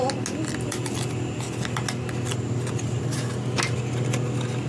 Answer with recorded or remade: recorded